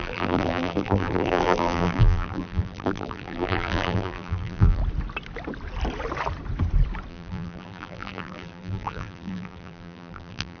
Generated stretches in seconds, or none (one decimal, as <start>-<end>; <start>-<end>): 0.0-4.8; 7.1-10.6